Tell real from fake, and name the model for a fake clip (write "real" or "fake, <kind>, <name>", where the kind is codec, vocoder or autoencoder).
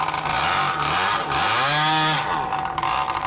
real